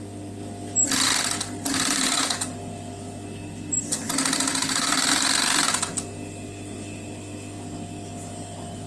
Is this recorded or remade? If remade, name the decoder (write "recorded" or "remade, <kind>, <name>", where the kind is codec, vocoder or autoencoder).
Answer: recorded